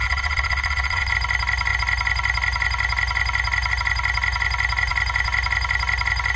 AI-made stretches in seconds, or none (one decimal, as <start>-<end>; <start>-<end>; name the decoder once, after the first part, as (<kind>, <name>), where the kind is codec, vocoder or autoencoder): 0.0-1.1 (vocoder, WaveNeXt)